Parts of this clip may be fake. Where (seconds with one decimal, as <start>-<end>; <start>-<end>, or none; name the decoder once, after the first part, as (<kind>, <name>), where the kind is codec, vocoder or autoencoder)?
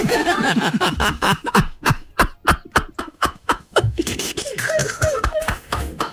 0.0-2.1 (autoencoder, DAC-VAE); 3.0-6.1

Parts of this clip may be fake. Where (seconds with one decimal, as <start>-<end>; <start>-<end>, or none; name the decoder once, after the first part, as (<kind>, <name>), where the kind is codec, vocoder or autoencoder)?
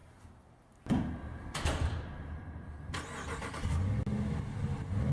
none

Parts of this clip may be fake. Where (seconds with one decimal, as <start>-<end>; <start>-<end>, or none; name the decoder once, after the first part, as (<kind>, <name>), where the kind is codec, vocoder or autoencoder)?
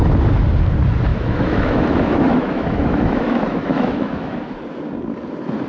1.1-4.5 (autoencoder, DAC-VAE)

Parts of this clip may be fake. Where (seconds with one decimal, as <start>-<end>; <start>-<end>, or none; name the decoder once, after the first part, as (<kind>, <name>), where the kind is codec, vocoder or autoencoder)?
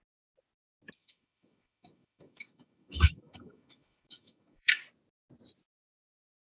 1.0-4.8 (autoencoder, DAC-VAE)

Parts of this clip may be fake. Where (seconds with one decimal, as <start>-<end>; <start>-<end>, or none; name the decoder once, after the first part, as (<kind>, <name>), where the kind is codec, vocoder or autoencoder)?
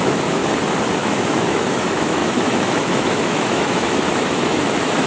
0.0-0.4 (autoencoder, DAC-VAE); 1.0-5.1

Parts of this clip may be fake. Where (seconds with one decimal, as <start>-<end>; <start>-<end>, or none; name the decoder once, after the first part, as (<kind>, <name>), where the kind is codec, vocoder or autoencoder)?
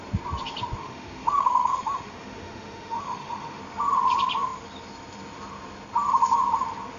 0.8-3.6 (autoencoder, DAC-VAE)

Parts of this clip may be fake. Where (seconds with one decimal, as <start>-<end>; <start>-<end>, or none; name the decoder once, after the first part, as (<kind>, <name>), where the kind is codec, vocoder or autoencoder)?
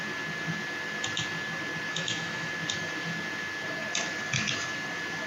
1.9-2.5 (autoencoder, DAC-VAE)